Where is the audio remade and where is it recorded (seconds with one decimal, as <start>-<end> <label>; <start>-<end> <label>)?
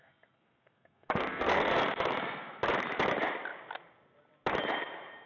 0.0-1.7 remade; 1.7-5.3 recorded